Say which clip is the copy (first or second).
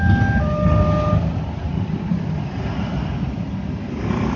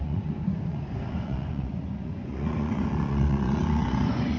second